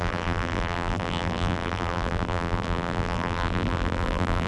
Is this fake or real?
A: fake